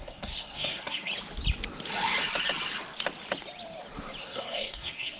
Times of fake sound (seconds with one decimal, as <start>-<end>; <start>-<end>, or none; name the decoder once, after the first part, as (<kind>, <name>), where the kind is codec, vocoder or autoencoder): 0.0-1.1 (codec, SNAC); 4.2-5.2